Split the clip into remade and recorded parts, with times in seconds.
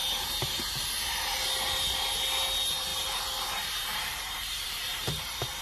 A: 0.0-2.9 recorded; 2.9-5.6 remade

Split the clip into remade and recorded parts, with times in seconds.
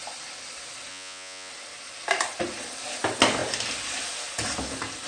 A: 0.0-0.9 recorded; 0.9-1.5 remade; 1.5-5.1 recorded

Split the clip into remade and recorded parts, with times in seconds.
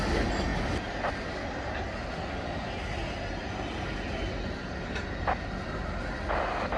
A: 0.0-6.8 recorded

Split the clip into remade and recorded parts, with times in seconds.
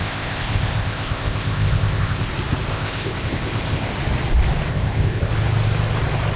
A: 0.0-2.3 remade; 2.3-2.7 recorded; 2.7-3.9 remade; 3.9-4.7 recorded; 4.7-5.3 remade; 5.3-6.4 recorded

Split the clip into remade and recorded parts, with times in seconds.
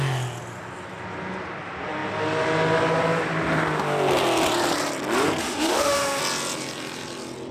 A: 0.0-5.4 recorded; 5.4-6.2 remade; 6.2-7.5 recorded